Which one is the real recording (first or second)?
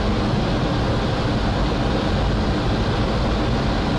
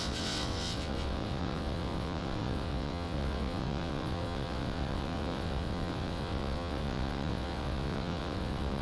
first